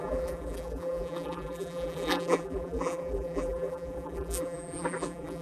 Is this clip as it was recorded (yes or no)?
no